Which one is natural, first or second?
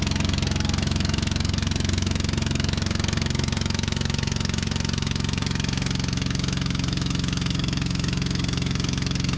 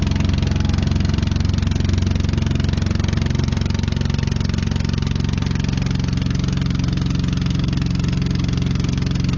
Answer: second